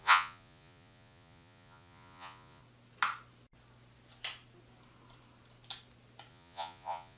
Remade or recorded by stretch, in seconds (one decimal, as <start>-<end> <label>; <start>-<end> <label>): 0.0-2.6 remade; 2.6-6.3 recorded; 6.3-7.2 remade